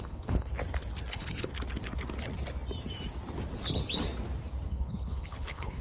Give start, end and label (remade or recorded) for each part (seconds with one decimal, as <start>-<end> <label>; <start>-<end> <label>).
0.0-0.5 remade; 0.5-1.1 recorded; 1.1-1.5 remade; 1.5-4.7 recorded; 4.7-5.8 remade